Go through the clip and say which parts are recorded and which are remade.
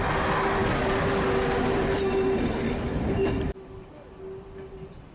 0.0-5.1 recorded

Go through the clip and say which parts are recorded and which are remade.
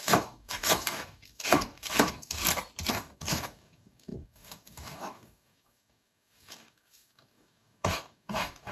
0.0-2.4 remade; 2.4-2.9 recorded; 2.9-8.7 remade